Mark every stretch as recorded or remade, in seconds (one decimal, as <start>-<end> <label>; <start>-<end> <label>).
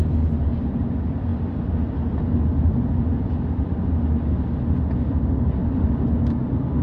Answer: 0.0-6.8 recorded